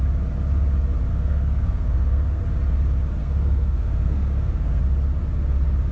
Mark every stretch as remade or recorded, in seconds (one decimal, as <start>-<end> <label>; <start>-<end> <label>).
0.0-1.1 recorded; 1.1-2.4 remade; 2.4-3.2 recorded; 3.2-4.8 remade; 4.8-5.9 recorded